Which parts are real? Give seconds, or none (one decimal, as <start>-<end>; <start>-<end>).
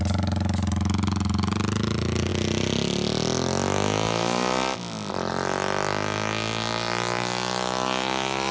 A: 0.0-8.5